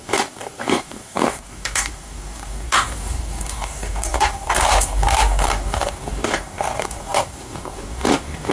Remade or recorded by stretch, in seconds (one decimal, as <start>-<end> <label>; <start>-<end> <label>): 0.0-8.5 remade